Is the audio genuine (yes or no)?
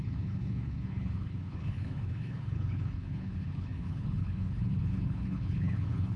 no